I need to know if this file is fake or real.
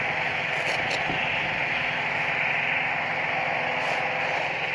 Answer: real